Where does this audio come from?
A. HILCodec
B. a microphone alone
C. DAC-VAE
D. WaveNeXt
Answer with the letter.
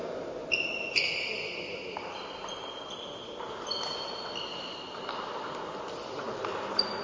B